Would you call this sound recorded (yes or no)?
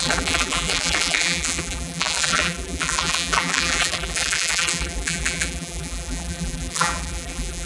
no